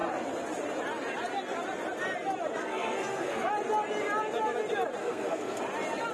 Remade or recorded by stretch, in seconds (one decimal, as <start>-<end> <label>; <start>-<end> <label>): 0.0-2.6 recorded; 2.6-3.5 remade; 3.5-5.0 recorded; 5.0-5.6 remade; 5.6-6.1 recorded